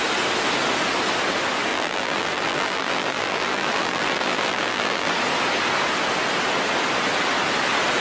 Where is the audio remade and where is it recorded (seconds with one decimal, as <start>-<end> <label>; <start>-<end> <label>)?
0.0-1.7 recorded; 1.7-5.1 remade; 5.1-8.0 recorded